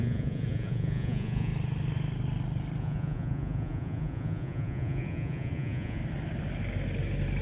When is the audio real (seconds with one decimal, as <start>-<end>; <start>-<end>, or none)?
1.5-2.8; 6.0-7.4